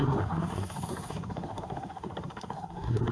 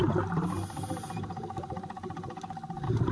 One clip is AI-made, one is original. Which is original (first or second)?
second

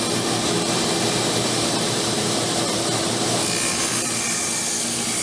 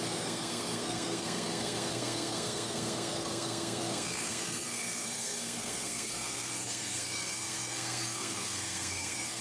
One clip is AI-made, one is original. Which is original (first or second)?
first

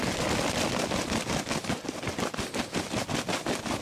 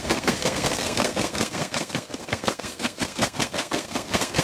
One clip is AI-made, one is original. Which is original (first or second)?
first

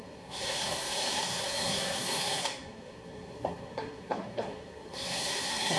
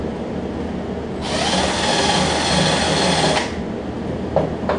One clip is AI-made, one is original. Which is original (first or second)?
second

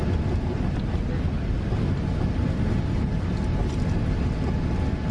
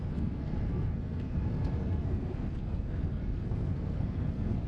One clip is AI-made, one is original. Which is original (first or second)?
first